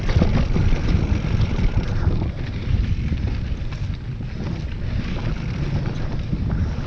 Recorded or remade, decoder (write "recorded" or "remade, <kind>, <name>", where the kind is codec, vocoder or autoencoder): recorded